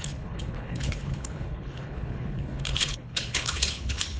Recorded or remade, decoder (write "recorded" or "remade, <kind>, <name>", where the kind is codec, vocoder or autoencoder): remade, codec, HILCodec